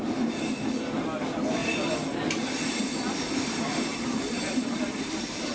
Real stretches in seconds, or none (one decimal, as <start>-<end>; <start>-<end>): 0.0-3.9